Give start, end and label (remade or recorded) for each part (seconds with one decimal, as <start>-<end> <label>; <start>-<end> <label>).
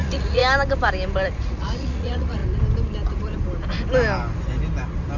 0.0-0.4 remade; 0.4-1.3 recorded; 1.3-2.4 remade; 2.4-5.2 recorded